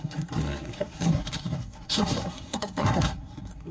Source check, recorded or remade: remade